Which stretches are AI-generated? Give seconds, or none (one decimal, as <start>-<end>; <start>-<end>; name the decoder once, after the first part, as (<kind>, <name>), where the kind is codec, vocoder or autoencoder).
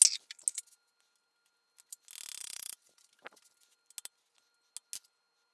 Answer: 2.4-3.1 (vocoder, BigVGAN v2)